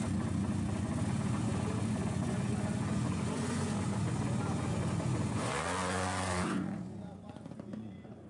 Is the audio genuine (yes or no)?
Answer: no